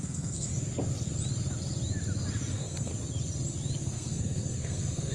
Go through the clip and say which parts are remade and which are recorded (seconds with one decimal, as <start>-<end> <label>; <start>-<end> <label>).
0.0-0.5 remade; 0.5-2.5 recorded; 2.5-2.9 remade; 2.9-3.8 recorded; 3.8-5.1 remade